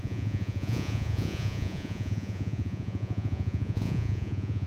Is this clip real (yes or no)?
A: no